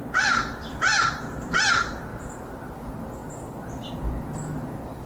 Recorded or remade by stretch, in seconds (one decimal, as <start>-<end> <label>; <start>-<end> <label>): 0.0-5.1 recorded

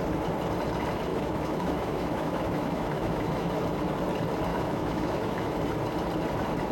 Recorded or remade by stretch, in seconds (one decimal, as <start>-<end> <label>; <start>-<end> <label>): 0.0-1.1 recorded; 1.1-3.5 remade; 3.5-4.5 recorded; 4.5-5.6 remade; 5.6-6.7 recorded

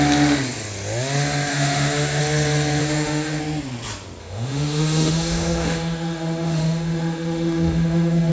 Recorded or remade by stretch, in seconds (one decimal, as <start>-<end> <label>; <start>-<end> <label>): 0.0-1.5 recorded; 1.5-2.2 remade; 2.2-2.8 recorded; 2.8-3.4 remade; 3.4-4.2 recorded; 4.2-8.3 remade

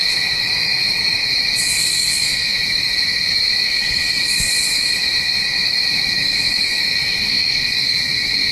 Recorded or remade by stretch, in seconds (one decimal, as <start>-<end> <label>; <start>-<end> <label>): 0.0-8.5 remade

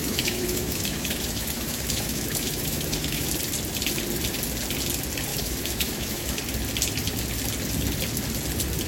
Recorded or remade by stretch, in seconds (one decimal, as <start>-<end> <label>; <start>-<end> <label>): 0.0-3.3 remade; 3.3-5.3 recorded; 5.3-6.4 remade; 6.4-8.9 recorded